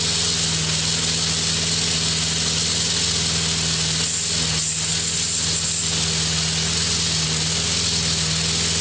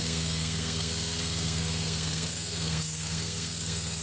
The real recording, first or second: first